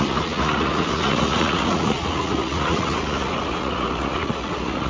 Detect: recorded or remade remade